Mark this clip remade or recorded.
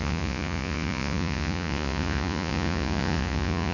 remade